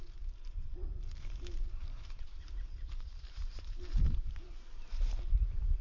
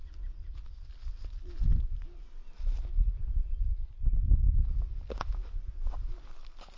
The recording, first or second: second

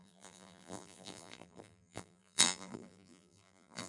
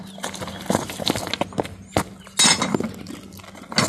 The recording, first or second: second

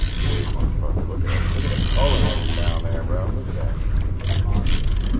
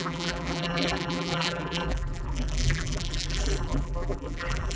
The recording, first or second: first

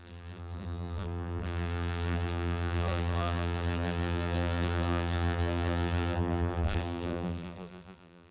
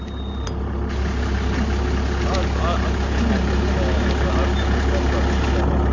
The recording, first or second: second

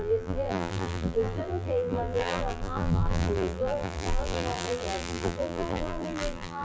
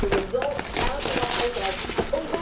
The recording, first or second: second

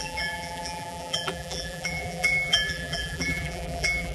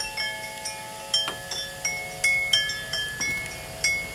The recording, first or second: second